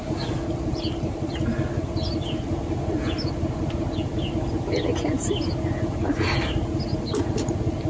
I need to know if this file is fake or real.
real